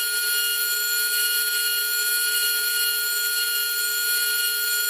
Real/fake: real